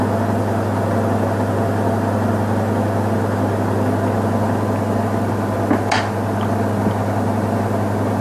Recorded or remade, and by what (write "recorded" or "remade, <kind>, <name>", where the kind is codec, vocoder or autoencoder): recorded